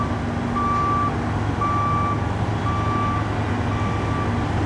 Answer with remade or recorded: recorded